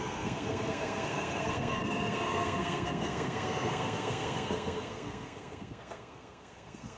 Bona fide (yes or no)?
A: no